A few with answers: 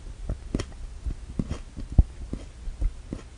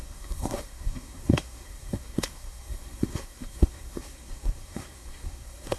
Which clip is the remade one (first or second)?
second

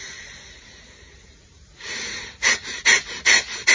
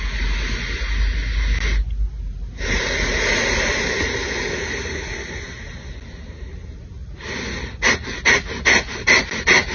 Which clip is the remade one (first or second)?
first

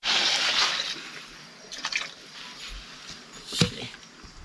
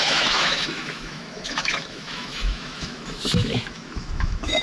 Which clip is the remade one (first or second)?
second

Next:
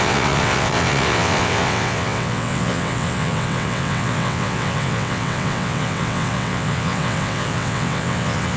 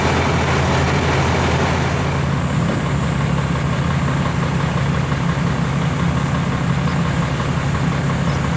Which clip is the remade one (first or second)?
first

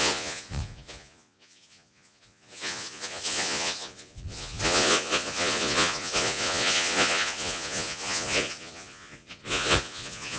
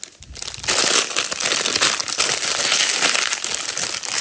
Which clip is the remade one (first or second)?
first